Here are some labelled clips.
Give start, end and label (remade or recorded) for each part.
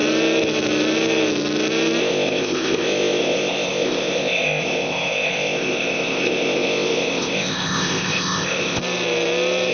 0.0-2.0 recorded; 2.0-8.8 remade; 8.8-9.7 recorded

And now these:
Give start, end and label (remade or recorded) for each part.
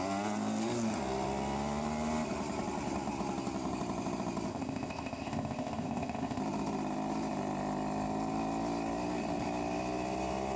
0.0-4.5 recorded; 4.5-6.4 remade; 6.4-10.6 recorded